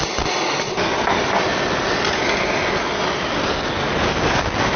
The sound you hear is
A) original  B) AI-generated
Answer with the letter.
A